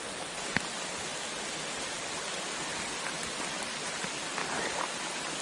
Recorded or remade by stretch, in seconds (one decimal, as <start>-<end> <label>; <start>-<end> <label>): 0.0-5.4 recorded